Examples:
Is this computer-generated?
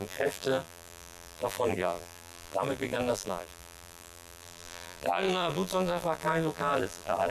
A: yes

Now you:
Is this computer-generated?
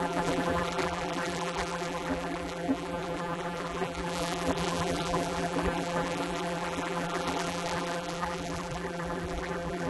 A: yes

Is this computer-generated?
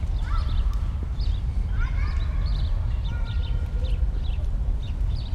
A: yes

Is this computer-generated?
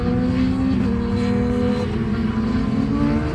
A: no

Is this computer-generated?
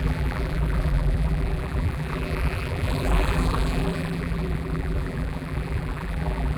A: yes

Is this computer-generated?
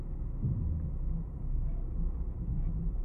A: no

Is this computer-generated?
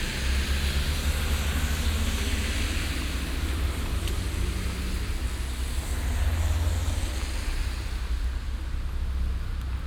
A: no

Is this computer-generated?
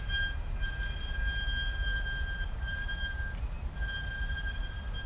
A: no